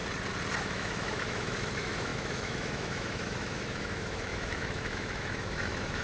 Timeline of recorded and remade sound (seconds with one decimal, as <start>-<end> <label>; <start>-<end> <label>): 0.0-0.6 recorded; 0.6-6.0 remade